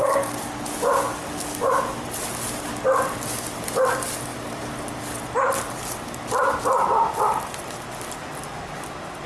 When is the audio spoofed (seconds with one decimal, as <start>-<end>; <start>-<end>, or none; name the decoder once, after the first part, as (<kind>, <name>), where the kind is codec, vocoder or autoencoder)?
none